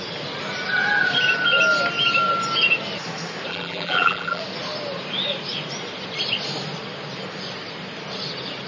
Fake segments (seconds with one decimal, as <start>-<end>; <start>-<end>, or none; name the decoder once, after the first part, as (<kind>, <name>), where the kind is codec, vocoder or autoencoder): 3.5-4.4 (vocoder, BigVGAN v2)

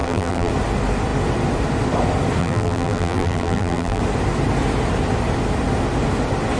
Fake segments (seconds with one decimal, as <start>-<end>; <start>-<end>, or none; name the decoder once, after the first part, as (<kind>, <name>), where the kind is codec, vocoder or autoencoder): 0.0-0.5 (vocoder, BigVGAN v2); 2.4-4.0